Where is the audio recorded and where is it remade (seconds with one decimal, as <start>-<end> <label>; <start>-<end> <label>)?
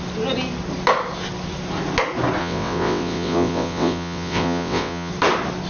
0.0-2.4 recorded; 2.4-5.1 remade; 5.1-5.7 recorded